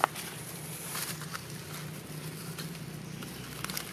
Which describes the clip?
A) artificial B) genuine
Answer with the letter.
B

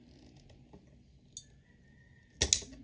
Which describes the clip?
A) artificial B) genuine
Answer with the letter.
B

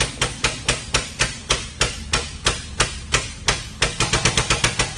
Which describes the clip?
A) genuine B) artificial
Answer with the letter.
A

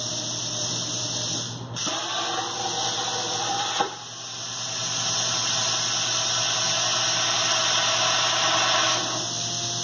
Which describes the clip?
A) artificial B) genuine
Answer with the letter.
B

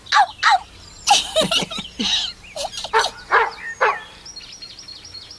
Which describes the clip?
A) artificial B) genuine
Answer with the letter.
B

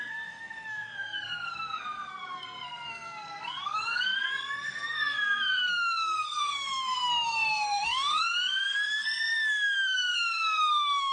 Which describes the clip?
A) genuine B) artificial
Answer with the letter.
B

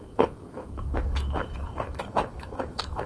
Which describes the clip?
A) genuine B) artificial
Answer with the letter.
B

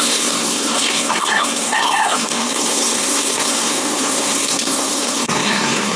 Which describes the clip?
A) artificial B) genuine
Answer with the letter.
A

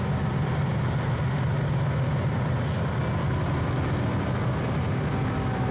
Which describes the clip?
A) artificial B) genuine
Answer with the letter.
B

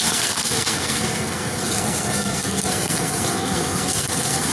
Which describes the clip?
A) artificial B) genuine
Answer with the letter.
A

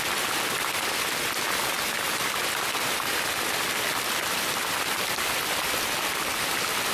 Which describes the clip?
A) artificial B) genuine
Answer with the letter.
B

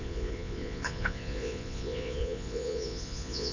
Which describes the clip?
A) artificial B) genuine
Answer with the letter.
A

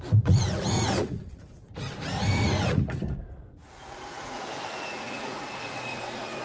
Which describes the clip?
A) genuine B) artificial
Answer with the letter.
B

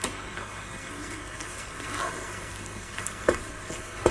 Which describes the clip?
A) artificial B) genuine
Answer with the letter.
A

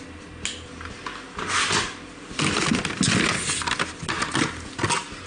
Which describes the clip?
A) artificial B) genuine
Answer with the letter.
B